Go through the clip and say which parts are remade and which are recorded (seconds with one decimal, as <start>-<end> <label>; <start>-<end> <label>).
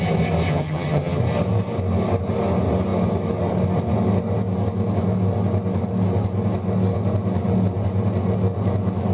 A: 0.0-0.5 recorded; 0.5-1.2 remade; 1.2-9.1 recorded